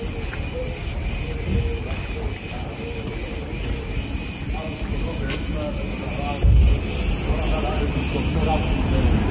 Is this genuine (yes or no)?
yes